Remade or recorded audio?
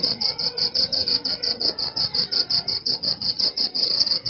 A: remade